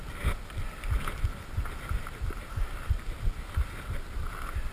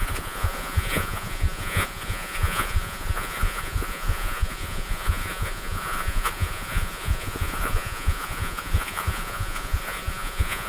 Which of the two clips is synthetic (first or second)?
second